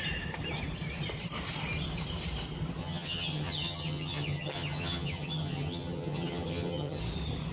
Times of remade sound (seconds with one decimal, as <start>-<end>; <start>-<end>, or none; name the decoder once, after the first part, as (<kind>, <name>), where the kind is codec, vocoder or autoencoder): 2.8-7.0 (vocoder, HiFi-GAN)